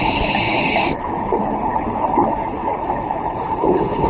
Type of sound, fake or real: fake